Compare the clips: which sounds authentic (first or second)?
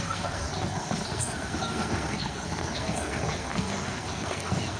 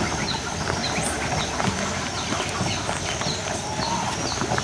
second